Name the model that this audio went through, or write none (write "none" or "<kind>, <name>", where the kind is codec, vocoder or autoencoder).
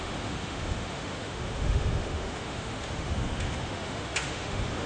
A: autoencoder, DAC-VAE